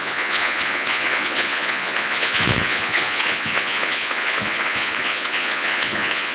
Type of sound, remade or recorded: remade